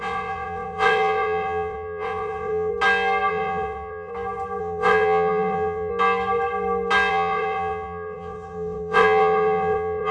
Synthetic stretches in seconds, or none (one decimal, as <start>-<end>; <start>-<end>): 0.0-2.7; 3.3-4.1; 4.6-5.9; 7.1-10.1